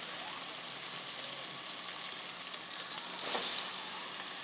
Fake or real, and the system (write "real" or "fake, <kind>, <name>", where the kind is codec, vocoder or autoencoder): real